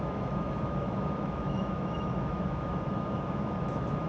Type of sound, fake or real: fake